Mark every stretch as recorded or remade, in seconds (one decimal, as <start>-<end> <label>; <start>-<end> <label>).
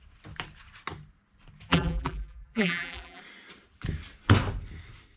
0.0-1.7 recorded; 1.7-3.2 remade; 3.2-5.2 recorded